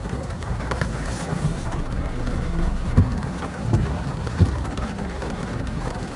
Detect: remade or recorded remade